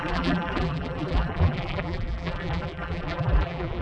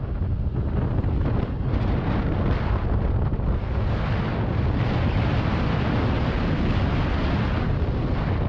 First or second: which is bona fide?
second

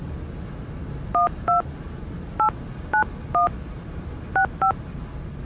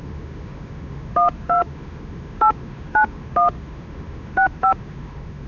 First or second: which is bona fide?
first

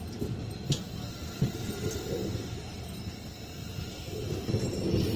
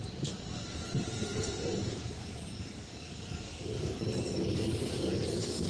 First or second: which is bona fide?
first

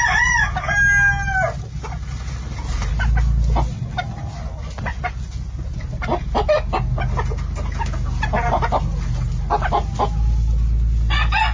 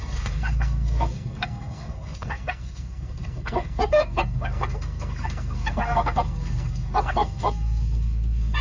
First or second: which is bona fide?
first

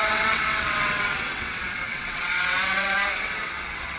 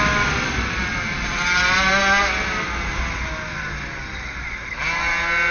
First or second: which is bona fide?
second